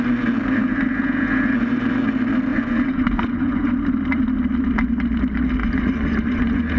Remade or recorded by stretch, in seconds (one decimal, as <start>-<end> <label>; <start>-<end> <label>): 0.0-2.5 recorded; 2.5-3.7 remade; 3.7-5.6 recorded; 5.6-6.8 remade